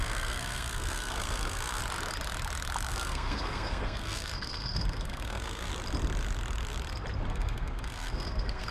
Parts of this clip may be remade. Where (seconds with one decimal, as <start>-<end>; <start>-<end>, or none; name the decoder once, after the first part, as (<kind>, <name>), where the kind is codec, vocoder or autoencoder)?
0.0-1.8 (codec, SNAC); 2.9-5.7; 7.3-8.7